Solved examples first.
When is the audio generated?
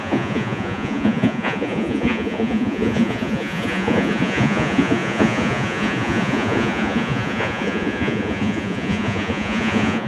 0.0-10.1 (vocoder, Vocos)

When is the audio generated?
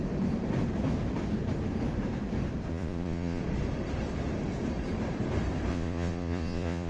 2.7-3.4 (vocoder, Vocos); 5.7-6.9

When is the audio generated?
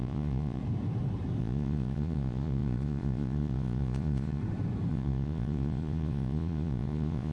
0.0-0.6 (vocoder, Vocos); 1.4-4.4; 4.9-7.3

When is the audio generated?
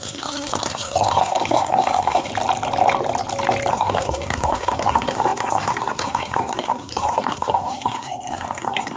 0.0-2.3 (codec, SNAC); 3.7-9.0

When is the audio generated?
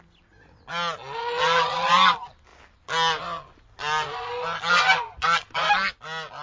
none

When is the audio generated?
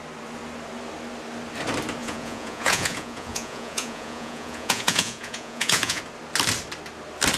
2.0-6.0 (vocoder, Vocos)